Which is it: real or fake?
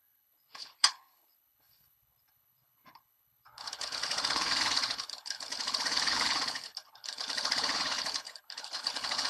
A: fake